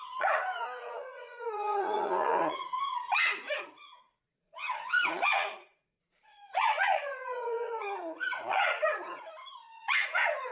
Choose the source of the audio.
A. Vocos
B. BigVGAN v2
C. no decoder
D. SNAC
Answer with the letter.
A